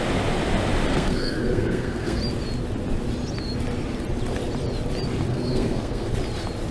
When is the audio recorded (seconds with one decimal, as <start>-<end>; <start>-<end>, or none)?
0.0-0.9; 2.2-5.3; 6.1-6.7